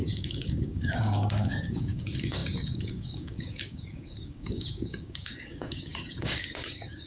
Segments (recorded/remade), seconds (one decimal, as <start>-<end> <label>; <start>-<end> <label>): 0.0-7.1 remade